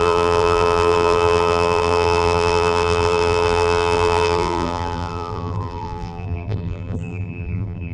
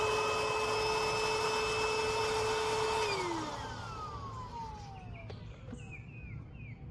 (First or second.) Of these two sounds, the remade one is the first